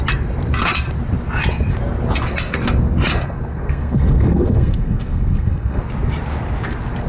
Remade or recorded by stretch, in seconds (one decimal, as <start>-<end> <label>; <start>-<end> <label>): 0.0-3.6 recorded; 3.6-5.8 remade; 5.8-7.1 recorded